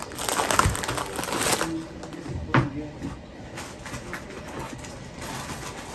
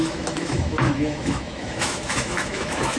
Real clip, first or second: first